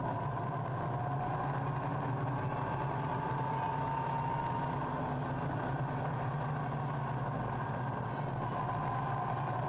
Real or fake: real